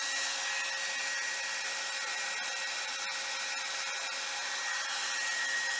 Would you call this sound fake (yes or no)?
no